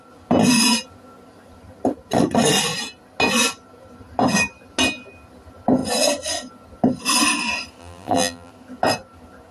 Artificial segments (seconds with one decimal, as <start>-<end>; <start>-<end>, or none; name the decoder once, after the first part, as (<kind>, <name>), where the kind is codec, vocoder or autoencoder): 7.8-8.5 (vocoder, BigVGAN v2)